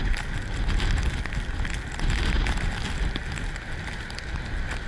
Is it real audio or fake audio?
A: real